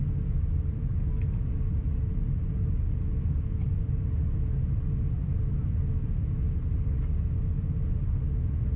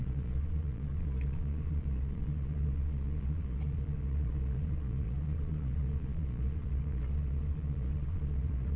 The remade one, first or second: second